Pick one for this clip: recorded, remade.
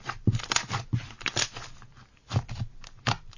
recorded